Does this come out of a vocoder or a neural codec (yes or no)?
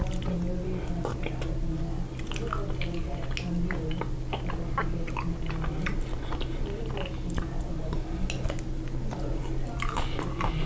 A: no